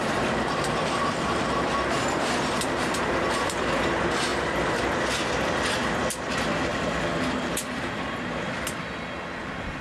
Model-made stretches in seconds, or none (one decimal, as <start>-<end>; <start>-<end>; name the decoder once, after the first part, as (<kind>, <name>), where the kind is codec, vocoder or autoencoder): 0.0-3.6 (vocoder, BigVGAN v2); 4.3-4.9; 6.7-8.0